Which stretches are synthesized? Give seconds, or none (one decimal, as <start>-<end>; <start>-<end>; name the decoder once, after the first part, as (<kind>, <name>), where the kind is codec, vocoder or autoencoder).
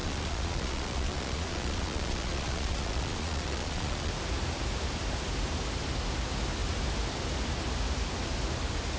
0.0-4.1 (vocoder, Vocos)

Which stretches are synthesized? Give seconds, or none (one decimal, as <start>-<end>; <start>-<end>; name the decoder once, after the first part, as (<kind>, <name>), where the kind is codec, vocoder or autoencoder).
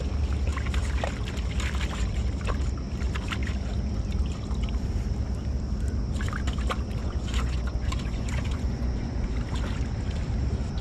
7.0-9.3 (vocoder, Vocos)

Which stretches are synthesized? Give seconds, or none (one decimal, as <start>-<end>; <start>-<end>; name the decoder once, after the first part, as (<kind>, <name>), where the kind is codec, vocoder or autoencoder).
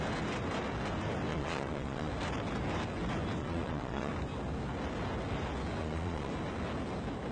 1.3-2.1 (vocoder, Vocos); 3.4-4.1; 5.8-6.3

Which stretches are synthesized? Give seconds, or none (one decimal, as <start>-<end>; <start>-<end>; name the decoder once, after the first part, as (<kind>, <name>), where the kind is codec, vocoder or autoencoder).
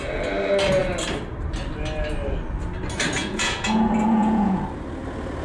3.2-4.6 (vocoder, Vocos)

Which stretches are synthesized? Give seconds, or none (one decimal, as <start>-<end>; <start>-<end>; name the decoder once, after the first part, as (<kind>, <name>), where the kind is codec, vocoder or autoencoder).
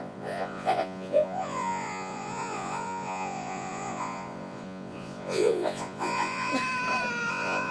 0.0-6.5 (vocoder, Vocos); 7.3-7.7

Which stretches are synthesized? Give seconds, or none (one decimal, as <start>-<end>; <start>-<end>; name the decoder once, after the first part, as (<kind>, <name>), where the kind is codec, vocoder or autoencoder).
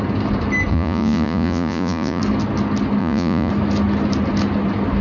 0.7-2.2 (vocoder, Vocos); 3.0-3.5